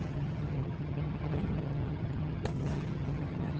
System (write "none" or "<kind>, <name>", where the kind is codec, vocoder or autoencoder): vocoder, HiFi-GAN